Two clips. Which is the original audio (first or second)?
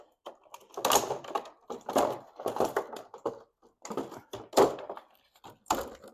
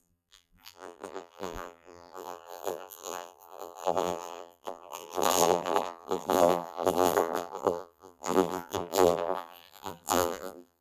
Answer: first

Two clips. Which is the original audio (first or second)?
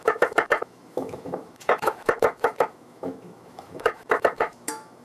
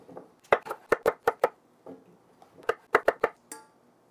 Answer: second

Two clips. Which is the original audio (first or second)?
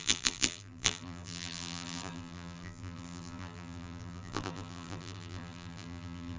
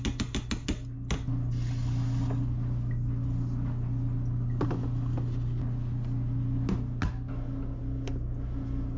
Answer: second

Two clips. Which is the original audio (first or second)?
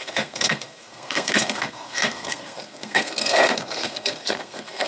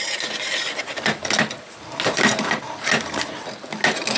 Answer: second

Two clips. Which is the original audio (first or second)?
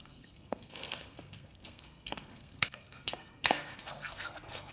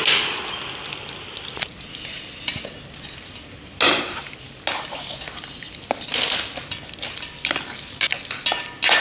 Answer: second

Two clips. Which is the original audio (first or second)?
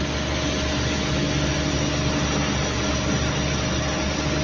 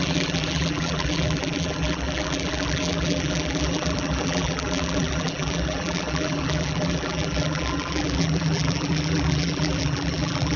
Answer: first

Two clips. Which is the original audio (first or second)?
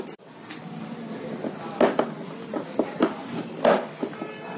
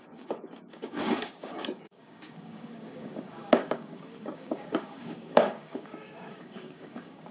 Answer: first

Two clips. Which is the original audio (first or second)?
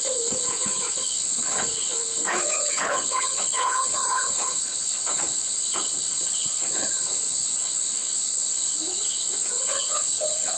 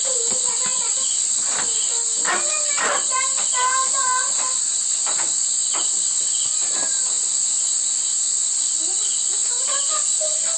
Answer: second